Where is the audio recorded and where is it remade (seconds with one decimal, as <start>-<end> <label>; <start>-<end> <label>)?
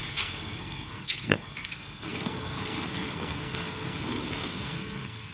0.0-5.3 remade